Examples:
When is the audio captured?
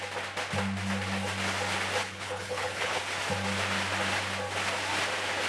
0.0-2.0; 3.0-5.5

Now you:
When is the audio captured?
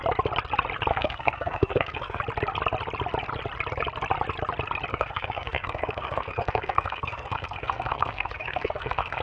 0.0-0.9; 2.2-4.9